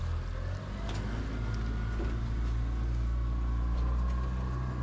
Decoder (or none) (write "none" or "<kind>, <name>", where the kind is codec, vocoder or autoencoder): none